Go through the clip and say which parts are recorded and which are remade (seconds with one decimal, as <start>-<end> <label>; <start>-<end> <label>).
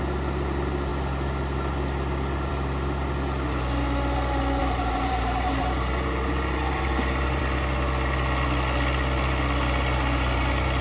0.0-4.6 recorded; 4.6-7.4 remade; 7.4-10.8 recorded